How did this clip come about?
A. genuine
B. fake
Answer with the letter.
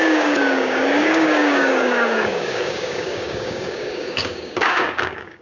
B